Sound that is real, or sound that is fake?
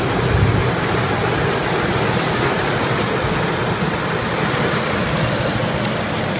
real